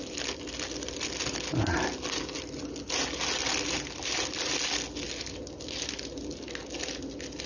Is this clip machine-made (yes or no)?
no